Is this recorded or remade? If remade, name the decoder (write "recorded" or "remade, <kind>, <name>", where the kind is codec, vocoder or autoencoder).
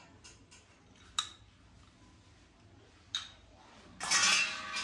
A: recorded